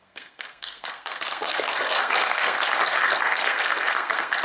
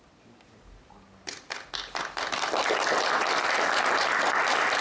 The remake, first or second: first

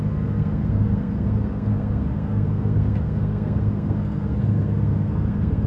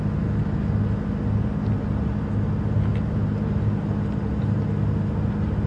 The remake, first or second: first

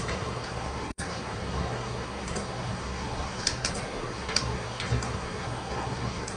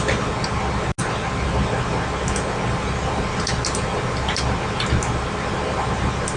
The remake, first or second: first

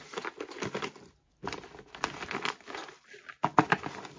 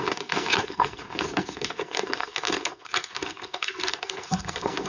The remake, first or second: second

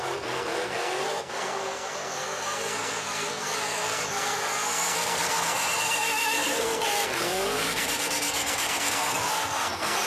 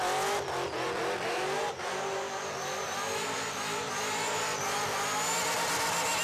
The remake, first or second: first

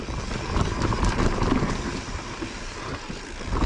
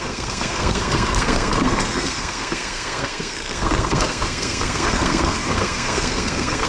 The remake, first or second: second